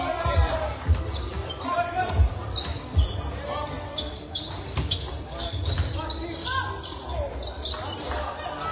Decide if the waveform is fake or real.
real